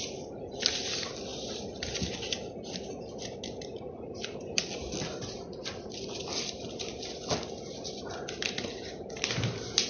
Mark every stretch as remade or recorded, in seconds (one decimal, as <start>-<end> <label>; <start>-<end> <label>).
0.0-9.9 recorded